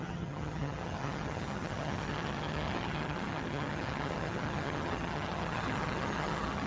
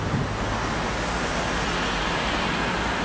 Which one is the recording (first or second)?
second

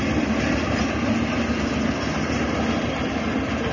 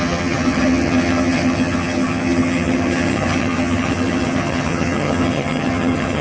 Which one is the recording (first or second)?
first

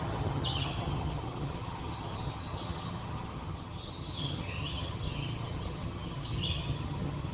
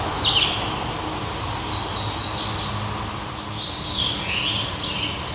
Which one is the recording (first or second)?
second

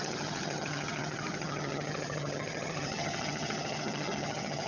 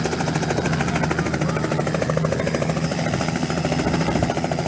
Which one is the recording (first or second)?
second